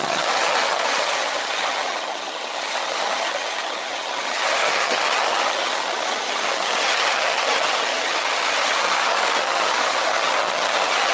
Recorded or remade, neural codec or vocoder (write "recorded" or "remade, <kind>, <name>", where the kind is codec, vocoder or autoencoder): remade, vocoder, HiFi-GAN